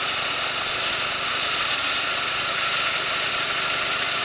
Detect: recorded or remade remade